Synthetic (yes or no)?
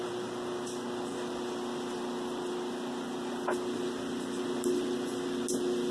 no